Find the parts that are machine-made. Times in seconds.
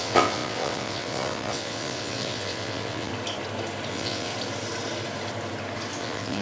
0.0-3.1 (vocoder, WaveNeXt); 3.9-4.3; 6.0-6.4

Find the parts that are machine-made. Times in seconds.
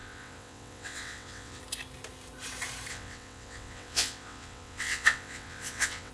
0.0-1.6 (vocoder, WaveNeXt); 2.9-6.1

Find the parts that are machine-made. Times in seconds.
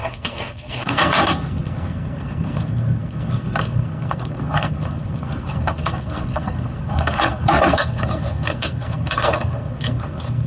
0.0-10.5 (codec, SNAC)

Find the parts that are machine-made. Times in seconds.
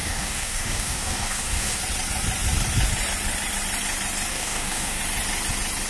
0.0-1.8 (codec, DAC); 4.3-5.0